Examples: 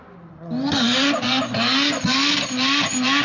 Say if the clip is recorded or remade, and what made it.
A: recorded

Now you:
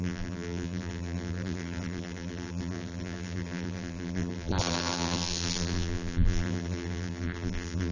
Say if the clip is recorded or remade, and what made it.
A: remade, vocoder, BigVGAN v2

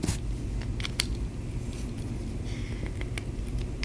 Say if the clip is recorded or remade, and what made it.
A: recorded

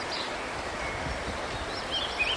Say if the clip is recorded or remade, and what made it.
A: recorded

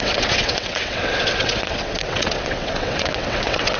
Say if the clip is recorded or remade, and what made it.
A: remade, vocoder, WaveNeXt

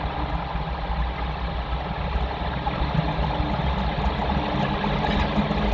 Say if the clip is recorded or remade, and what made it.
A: recorded